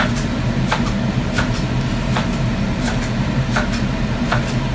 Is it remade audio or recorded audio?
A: remade